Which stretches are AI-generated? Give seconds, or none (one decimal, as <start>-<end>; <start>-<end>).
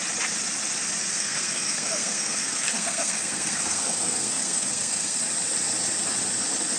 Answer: 1.1-5.2